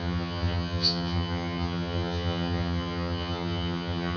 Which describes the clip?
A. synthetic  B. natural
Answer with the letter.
A